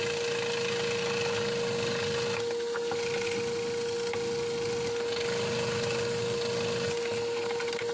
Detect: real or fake real